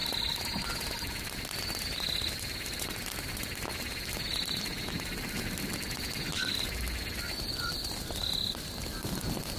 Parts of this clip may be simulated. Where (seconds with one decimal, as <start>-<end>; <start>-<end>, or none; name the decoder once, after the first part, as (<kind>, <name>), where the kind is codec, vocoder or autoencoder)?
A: none